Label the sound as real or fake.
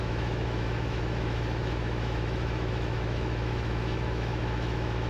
fake